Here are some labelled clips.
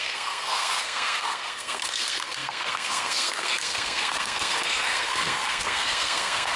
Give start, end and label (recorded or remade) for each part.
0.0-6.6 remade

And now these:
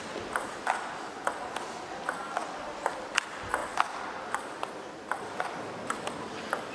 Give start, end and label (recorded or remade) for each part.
0.0-6.7 recorded

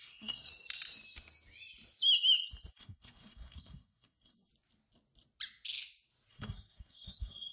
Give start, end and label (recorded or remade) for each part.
0.0-0.5 remade; 0.5-2.7 recorded; 2.7-4.5 remade; 4.5-6.3 recorded; 6.3-7.5 remade

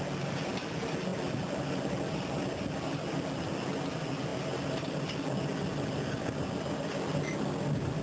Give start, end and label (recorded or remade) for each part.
0.0-8.0 recorded

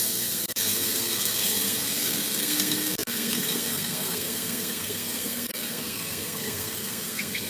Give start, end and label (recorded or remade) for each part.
0.0-7.5 remade

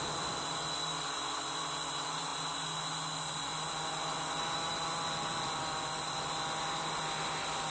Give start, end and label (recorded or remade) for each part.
0.0-7.7 recorded

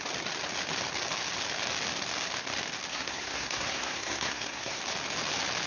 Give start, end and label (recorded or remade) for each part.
0.0-2.9 recorded; 2.9-4.8 remade; 4.8-5.7 recorded